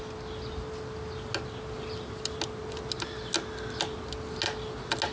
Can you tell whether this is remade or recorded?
recorded